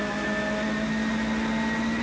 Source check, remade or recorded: recorded